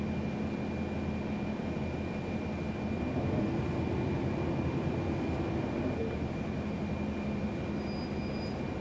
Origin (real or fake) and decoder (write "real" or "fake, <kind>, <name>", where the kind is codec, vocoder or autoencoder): real